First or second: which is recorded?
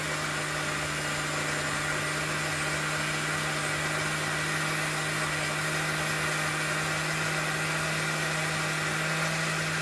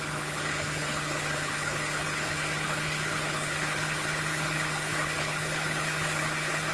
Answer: first